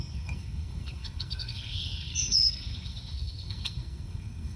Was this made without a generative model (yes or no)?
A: no